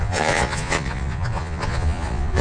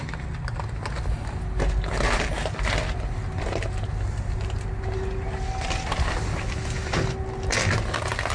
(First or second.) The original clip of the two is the second